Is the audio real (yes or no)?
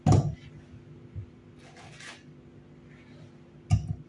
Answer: yes